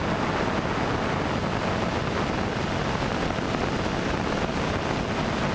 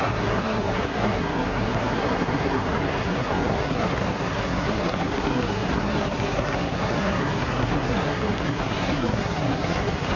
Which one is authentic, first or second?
first